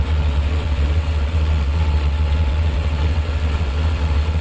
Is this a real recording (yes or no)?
no